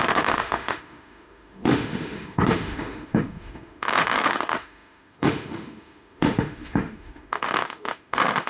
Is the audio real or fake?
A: fake